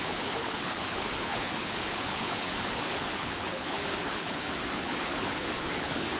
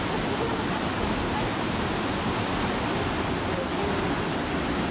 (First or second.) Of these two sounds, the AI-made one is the first